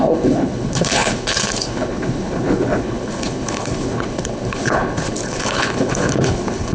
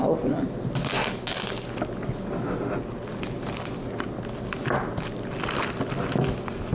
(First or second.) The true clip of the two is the second